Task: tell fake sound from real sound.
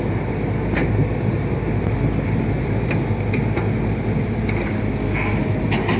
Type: real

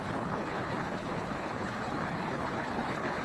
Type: fake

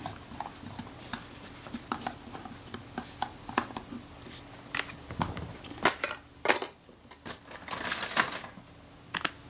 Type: real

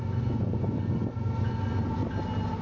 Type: real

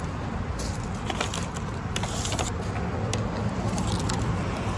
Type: real